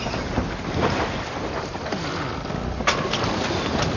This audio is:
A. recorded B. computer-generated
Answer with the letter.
A